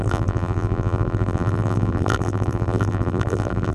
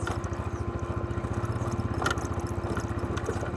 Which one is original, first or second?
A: second